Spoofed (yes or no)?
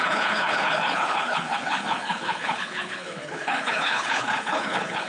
yes